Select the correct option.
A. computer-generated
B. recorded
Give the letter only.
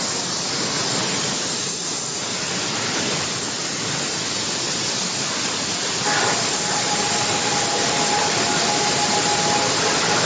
B